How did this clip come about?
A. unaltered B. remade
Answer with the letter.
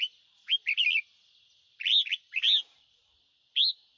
A